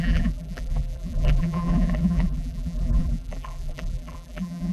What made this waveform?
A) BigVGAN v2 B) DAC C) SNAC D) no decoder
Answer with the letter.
A